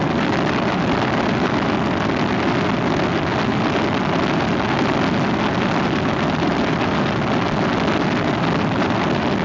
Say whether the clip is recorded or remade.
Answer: recorded